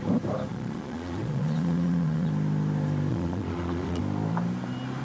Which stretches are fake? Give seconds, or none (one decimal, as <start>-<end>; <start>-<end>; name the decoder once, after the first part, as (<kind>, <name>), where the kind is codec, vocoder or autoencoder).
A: 0.5-2.3 (vocoder, Vocos); 3.1-4.0

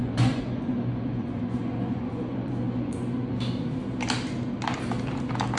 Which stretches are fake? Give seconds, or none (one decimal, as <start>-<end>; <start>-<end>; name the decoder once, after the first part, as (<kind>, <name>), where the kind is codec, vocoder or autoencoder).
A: 0.0-3.4 (vocoder, Vocos)

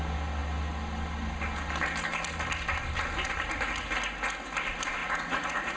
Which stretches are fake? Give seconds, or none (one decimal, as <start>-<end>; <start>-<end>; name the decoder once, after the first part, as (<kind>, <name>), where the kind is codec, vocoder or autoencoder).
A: 5.0-5.8 (vocoder, Vocos)

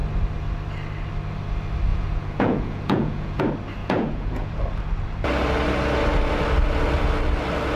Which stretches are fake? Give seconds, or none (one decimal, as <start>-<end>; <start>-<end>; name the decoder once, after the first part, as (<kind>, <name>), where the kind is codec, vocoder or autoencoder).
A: 1.9-3.4 (vocoder, Vocos); 3.8-4.5

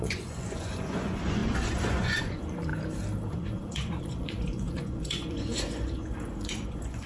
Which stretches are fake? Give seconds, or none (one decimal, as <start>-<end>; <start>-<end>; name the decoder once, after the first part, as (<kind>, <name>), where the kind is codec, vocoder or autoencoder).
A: 0.0-2.7 (vocoder, Vocos); 3.3-7.1

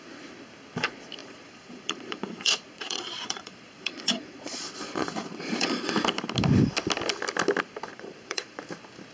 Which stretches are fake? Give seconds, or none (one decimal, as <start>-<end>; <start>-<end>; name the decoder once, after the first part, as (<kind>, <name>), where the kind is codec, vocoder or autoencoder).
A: 1.2-5.9 (vocoder, Vocos); 7.9-8.6

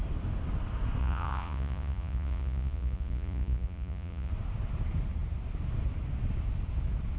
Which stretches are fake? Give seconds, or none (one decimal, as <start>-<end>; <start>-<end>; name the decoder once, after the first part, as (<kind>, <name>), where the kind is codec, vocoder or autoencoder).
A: 1.0-4.3 (vocoder, Vocos)